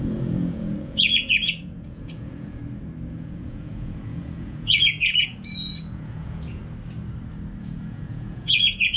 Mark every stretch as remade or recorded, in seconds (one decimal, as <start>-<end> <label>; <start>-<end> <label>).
0.0-2.6 remade; 2.6-3.1 recorded; 3.1-6.6 remade; 6.6-7.6 recorded; 7.6-9.0 remade